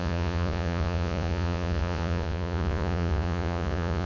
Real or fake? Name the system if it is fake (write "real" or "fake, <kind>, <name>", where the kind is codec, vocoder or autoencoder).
fake, vocoder, Vocos